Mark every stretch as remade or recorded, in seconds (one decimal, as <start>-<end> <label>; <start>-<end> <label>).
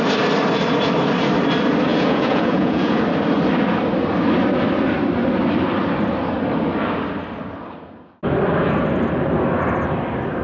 0.0-1.9 recorded; 1.9-3.0 remade; 3.0-10.4 recorded